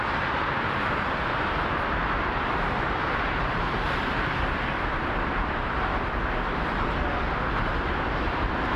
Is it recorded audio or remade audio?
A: recorded